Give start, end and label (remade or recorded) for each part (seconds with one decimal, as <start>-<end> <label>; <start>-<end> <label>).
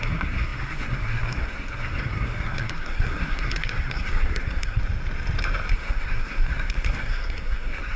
0.0-4.8 remade; 4.8-5.7 recorded; 5.7-8.0 remade